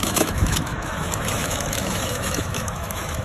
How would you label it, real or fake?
fake